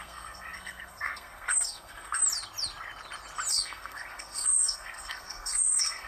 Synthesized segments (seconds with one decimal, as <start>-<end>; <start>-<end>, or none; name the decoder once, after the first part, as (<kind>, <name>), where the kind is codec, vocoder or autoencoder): 0.0-2.2 (codec, SNAC); 3.5-6.1